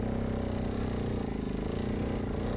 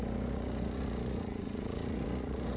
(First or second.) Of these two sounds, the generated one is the second